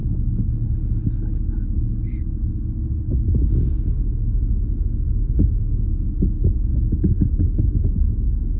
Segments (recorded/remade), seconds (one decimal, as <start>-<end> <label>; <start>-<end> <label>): 0.0-3.9 recorded; 3.9-5.9 remade; 5.9-7.0 recorded; 7.0-8.6 remade